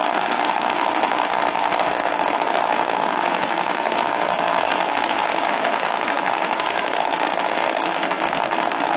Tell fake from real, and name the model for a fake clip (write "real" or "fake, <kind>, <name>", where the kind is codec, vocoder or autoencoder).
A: fake, codec, SNAC